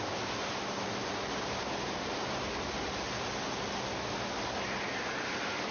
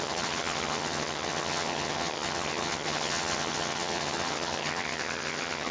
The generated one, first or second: second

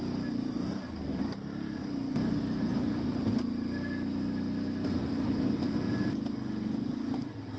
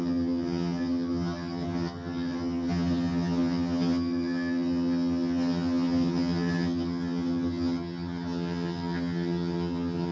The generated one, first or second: second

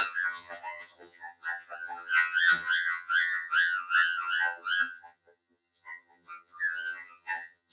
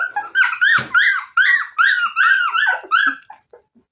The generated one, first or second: first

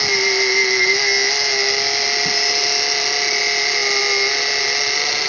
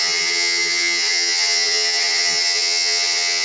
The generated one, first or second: second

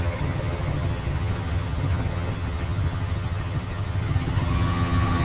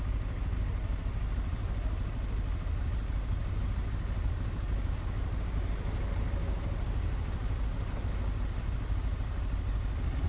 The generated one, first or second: first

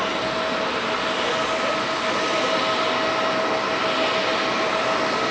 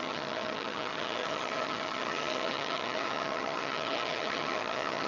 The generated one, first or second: second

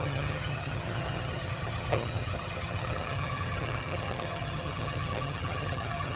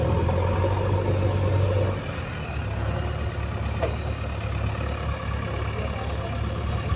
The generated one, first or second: first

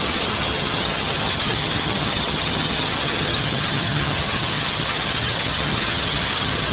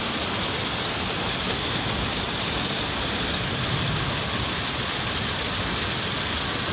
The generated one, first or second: first